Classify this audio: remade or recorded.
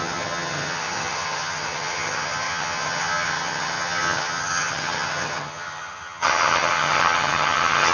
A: remade